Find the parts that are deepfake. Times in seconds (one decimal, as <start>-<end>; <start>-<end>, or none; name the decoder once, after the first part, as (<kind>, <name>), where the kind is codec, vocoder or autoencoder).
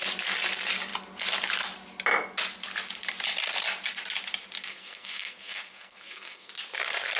4.7-6.5 (codec, SNAC)